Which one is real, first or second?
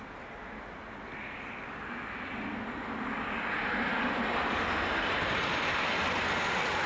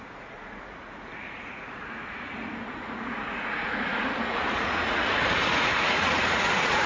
first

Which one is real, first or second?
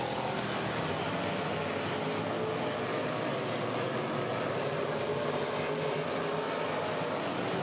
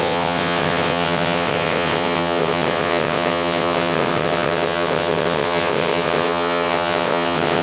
first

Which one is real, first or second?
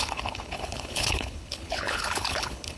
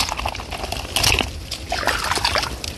second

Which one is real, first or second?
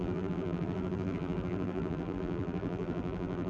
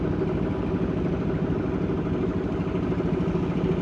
second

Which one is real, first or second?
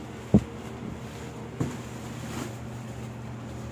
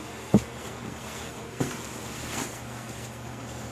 first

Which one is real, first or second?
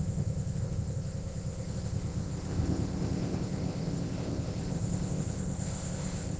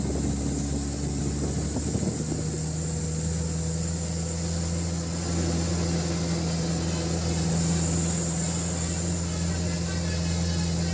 second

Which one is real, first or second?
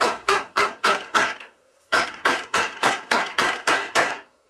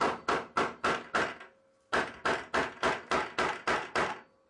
second